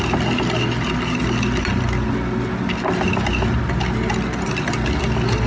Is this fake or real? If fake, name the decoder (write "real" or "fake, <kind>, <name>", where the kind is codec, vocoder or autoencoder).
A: real